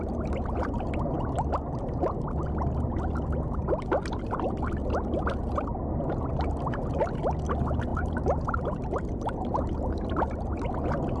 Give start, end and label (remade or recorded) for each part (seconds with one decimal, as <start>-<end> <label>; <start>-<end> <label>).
0.0-7.9 recorded; 7.9-10.6 remade; 10.6-11.2 recorded